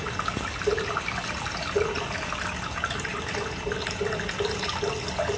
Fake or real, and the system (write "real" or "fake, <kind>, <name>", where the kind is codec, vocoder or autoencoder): real